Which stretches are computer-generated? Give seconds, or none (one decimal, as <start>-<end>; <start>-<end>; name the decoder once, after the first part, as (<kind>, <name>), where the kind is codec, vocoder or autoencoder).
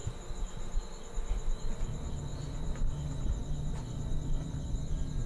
none